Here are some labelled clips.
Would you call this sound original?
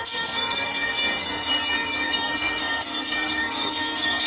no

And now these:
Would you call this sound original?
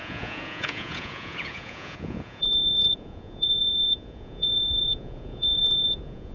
no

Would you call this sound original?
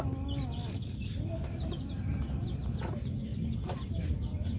yes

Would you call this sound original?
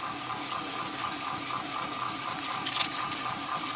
yes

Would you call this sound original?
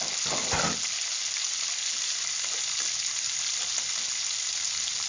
yes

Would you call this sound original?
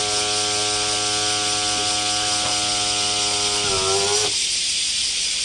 yes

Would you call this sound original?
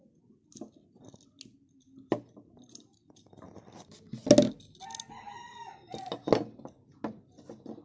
yes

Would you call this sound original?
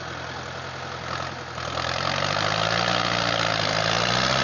yes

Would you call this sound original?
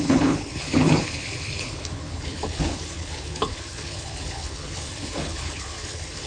no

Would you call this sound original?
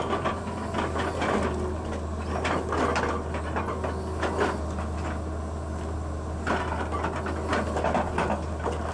yes